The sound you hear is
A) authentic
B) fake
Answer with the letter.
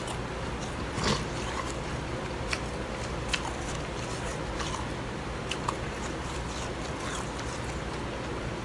A